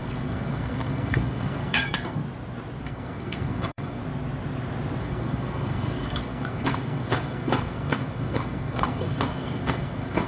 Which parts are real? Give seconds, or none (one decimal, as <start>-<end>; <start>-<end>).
2.2-2.8; 4.0-5.0

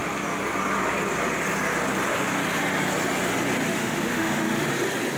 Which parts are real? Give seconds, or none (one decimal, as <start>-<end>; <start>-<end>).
0.0-3.7; 4.7-5.2

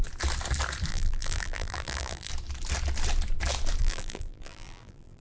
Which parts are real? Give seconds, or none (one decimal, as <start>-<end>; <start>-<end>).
0.0-0.9; 2.3-3.8

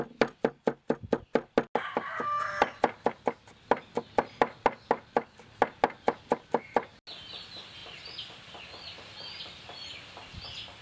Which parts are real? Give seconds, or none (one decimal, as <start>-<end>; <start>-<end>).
0.0-10.8

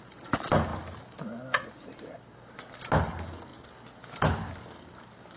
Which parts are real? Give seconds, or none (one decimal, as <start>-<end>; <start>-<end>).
0.0-5.4

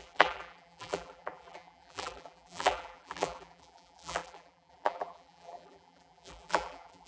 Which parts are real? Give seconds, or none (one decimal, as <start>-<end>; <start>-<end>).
none

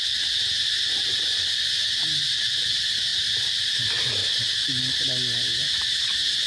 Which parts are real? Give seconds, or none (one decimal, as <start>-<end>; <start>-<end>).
0.0-3.1; 3.8-4.2; 6.0-6.5